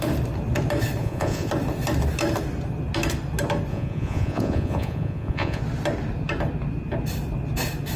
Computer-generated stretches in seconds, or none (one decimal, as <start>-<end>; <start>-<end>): 1.0-1.5; 3.7-5.6

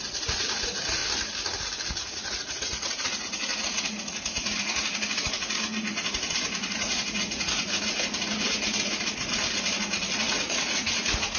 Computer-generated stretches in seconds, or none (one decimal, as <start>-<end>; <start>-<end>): 0.0-1.0; 2.0-11.4

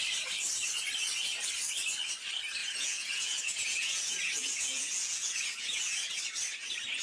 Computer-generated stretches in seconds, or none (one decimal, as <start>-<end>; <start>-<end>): 2.6-6.2